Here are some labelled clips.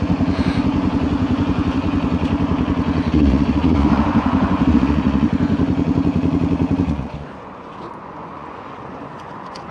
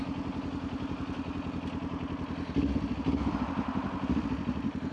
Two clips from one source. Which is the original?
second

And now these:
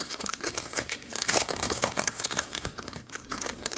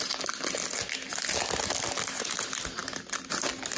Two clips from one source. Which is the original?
second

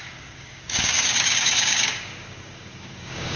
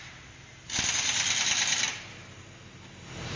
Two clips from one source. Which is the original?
second